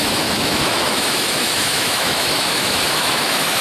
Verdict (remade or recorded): remade